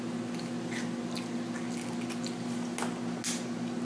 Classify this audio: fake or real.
real